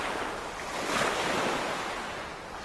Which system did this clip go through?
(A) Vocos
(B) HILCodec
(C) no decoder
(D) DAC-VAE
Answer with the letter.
C